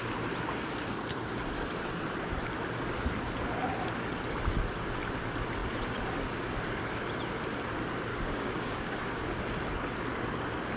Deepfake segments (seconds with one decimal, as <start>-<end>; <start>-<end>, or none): 8.1-9.2

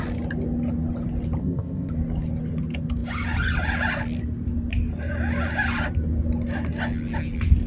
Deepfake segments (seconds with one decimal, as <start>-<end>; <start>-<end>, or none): 1.4-1.9

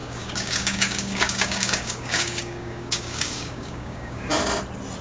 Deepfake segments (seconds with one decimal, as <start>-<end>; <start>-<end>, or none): 0.0-4.3

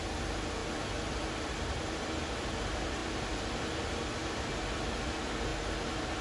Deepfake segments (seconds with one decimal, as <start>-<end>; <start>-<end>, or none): none